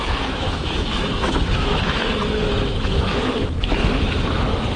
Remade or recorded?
remade